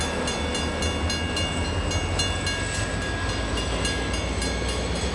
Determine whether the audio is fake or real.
real